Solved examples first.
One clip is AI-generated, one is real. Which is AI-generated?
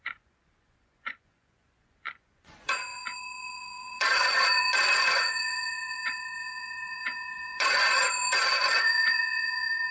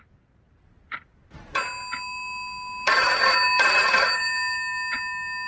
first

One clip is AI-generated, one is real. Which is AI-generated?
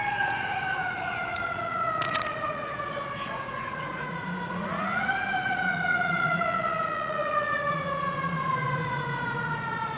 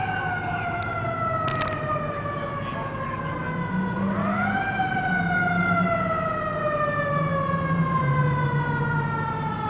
first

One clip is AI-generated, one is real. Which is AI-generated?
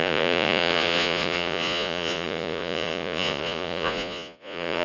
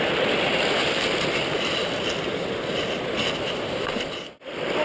first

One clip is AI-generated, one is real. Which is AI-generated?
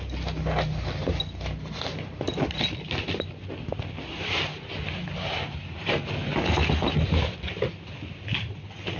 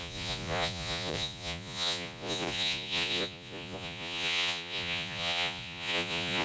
second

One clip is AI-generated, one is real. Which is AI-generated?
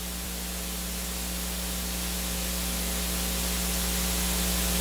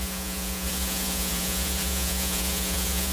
second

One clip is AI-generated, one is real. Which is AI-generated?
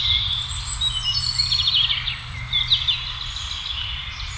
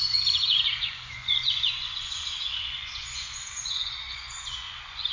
second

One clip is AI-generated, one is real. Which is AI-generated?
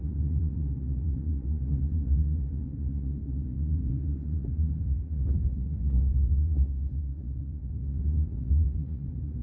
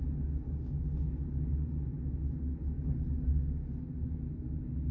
first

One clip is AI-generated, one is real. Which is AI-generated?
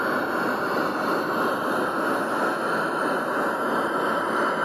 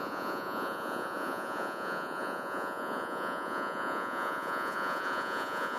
second